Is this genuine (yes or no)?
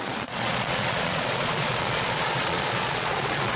no